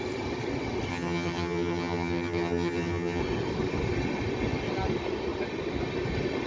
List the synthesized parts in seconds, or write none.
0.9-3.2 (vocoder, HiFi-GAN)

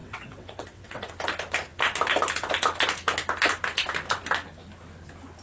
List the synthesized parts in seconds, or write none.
0.0-1.1 (vocoder, WaveNeXt)

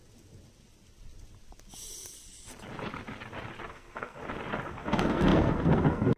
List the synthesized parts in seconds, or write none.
3.7-4.2 (codec, SNAC); 4.7-6.2

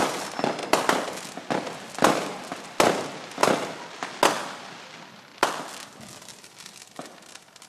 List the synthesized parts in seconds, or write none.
0.0-0.6 (vocoder, BigVGAN v2); 2.9-3.4; 4.6-7.7

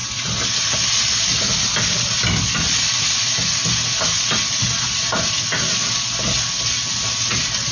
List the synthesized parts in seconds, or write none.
none

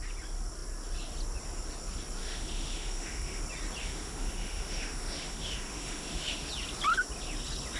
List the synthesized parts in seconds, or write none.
2.2-3.4 (autoencoder, DAC-VAE); 3.8-6.5